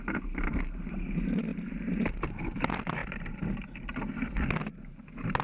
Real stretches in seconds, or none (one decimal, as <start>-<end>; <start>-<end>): 0.0-5.4